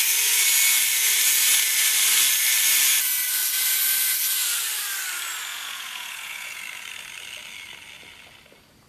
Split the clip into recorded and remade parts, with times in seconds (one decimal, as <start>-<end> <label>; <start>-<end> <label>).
0.0-5.5 recorded; 5.5-6.6 remade; 6.6-8.9 recorded